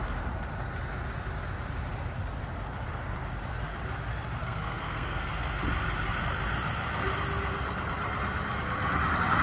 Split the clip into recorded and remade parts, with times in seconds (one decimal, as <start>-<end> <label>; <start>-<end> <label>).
0.0-4.4 recorded; 4.4-5.3 remade; 5.3-9.4 recorded